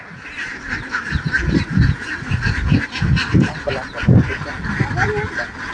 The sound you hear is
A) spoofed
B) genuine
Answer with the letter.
B